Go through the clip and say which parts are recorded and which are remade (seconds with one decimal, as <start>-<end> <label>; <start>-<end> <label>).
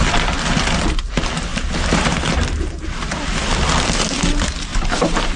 0.0-1.5 recorded; 1.5-3.2 remade; 3.2-4.7 recorded; 4.7-5.4 remade